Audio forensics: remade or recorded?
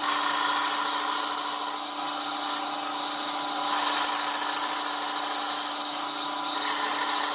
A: recorded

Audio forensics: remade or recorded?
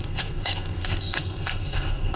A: remade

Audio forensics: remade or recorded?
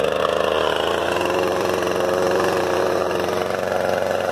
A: remade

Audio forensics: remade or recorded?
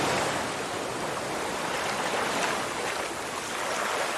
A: recorded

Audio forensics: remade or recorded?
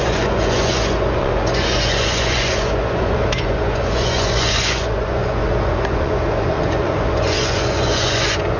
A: remade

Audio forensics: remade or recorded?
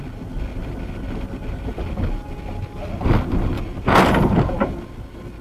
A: recorded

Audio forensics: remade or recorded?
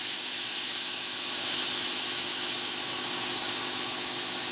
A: remade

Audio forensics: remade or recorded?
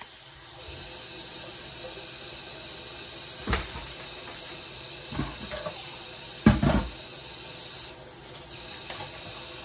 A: recorded